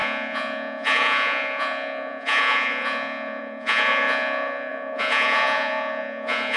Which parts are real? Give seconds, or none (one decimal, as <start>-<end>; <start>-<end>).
none